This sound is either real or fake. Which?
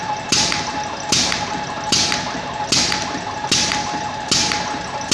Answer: real